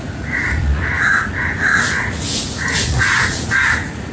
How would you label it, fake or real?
fake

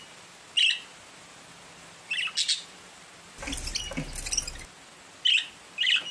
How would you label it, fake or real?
real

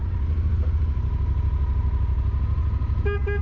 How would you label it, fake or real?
real